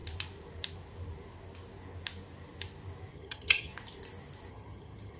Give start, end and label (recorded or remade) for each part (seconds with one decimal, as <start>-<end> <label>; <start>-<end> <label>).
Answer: 0.0-3.1 recorded; 3.1-3.7 remade; 3.7-4.5 recorded; 4.5-5.2 remade